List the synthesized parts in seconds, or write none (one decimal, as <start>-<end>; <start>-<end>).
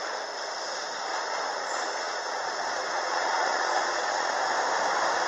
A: 1.1-4.3